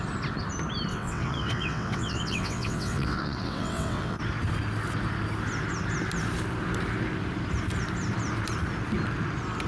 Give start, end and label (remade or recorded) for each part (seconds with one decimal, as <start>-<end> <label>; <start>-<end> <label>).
0.0-0.9 recorded; 0.9-4.2 remade; 4.2-9.7 recorded

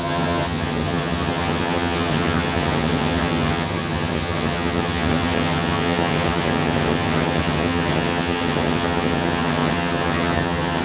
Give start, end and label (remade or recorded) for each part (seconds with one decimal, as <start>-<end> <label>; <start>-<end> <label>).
0.0-10.8 remade

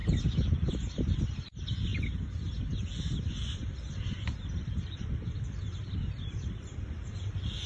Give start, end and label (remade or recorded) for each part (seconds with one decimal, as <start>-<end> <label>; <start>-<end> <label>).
0.0-0.7 recorded; 0.7-1.9 remade; 1.9-3.3 recorded; 3.3-7.7 remade

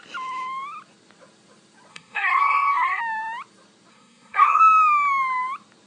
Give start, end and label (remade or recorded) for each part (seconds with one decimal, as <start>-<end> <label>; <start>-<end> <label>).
0.0-1.9 recorded; 1.9-3.0 remade; 3.0-3.9 recorded; 3.9-4.6 remade; 4.6-5.9 recorded

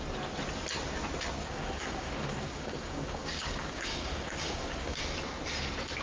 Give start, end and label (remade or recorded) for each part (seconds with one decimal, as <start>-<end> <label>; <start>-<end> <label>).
0.0-1.4 recorded; 1.4-5.0 remade; 5.0-6.0 recorded

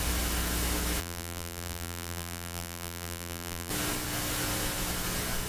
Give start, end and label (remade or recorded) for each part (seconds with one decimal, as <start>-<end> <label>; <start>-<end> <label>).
0.0-1.0 recorded; 1.0-3.7 remade; 3.7-5.5 recorded

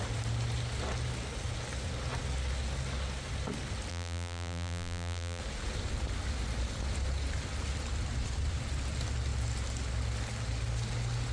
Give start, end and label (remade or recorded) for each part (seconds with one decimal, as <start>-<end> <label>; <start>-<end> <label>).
0.0-3.9 recorded; 3.9-5.4 remade; 5.4-11.3 recorded

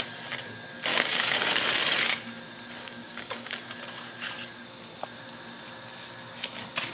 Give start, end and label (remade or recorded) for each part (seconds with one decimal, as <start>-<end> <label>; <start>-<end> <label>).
0.0-0.9 recorded; 0.9-1.6 remade; 1.6-2.8 recorded; 2.8-3.8 remade; 3.8-6.9 recorded